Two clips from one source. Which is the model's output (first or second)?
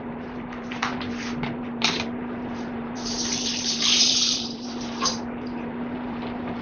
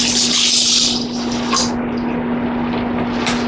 first